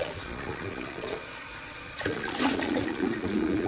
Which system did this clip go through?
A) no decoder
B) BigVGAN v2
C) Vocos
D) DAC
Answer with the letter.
C